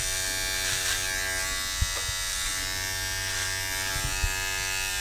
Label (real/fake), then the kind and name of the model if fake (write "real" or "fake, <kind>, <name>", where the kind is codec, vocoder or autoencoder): real